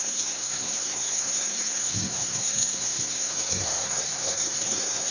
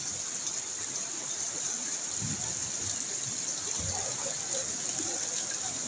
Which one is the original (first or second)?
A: second